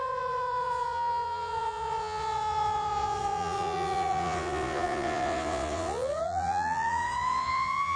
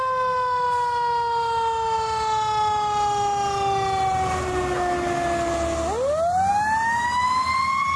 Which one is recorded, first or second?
second